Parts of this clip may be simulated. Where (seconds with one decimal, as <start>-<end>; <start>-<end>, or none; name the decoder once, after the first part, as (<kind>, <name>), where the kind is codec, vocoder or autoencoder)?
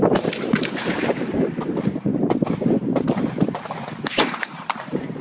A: 0.0-2.1 (vocoder, BigVGAN v2); 4.4-5.2